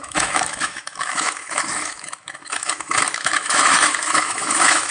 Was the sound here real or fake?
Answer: fake